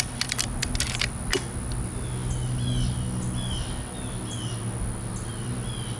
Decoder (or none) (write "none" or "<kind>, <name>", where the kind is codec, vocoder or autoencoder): none